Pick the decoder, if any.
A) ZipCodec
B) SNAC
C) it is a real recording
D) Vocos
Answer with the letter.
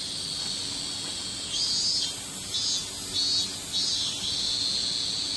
C